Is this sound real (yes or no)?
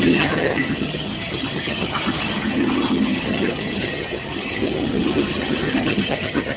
no